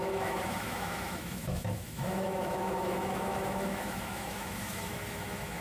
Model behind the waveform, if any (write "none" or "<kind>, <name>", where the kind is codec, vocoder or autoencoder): autoencoder, DAC-VAE